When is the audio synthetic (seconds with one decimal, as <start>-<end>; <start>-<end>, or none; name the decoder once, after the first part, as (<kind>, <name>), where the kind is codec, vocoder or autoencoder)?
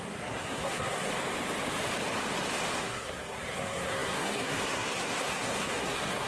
0.0-1.1 (codec, SNAC); 2.8-6.3